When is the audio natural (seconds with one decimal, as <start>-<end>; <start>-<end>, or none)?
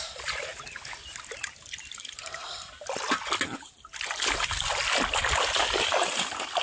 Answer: 0.5-1.9; 2.4-6.6